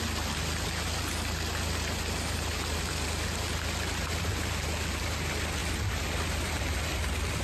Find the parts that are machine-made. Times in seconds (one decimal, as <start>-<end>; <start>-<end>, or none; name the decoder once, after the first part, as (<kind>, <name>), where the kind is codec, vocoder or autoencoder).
none

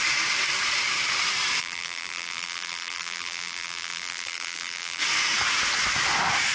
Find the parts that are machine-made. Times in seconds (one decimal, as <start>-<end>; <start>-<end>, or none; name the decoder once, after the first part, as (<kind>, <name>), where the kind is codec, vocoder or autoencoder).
1.6-5.0 (vocoder, BigVGAN v2)

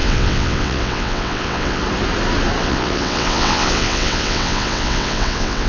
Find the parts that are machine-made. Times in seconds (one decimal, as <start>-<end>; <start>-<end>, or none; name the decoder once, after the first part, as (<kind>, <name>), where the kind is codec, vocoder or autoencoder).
0.0-1.8 (vocoder, WaveNeXt); 2.6-5.7

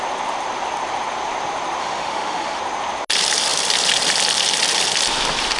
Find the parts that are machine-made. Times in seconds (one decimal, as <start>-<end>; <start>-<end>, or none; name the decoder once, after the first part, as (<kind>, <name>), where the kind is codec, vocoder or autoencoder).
1.8-2.6 (autoencoder, DAC-VAE)

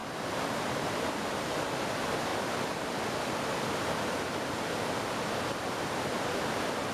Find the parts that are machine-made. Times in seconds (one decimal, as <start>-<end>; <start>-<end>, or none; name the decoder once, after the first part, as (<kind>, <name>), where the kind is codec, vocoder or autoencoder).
0.0-1.1 (vocoder, BigVGAN v2); 2.3-3.0

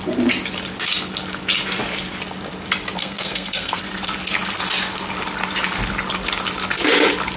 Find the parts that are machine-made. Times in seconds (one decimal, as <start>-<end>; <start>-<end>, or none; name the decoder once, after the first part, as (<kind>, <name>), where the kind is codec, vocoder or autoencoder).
3.0-3.8 (codec, SNAC)

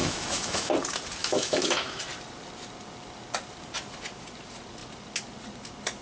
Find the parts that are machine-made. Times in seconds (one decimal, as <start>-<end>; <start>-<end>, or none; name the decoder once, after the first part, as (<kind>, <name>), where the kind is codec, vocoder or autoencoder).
0.0-0.7 (autoencoder, DAC-VAE); 1.2-2.0

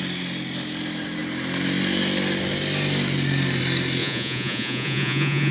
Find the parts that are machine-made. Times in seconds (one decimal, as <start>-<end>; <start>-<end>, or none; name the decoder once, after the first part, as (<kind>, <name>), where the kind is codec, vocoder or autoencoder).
4.0-5.5 (vocoder, Vocos)